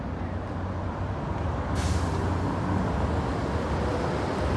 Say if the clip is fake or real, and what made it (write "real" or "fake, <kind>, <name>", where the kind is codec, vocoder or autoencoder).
real